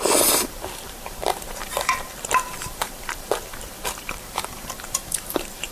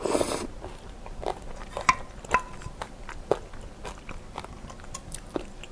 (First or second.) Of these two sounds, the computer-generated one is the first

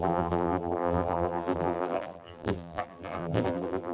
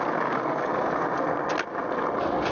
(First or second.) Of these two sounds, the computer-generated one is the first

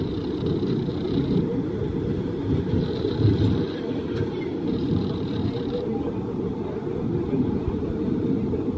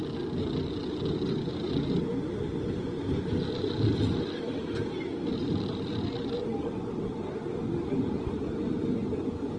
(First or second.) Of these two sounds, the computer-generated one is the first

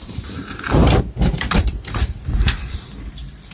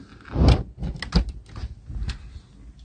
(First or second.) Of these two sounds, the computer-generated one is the first